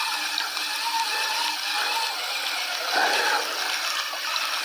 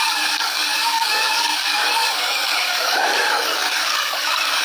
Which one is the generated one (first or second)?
second